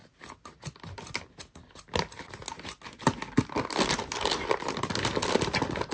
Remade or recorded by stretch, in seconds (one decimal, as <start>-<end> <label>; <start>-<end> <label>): 0.0-5.9 recorded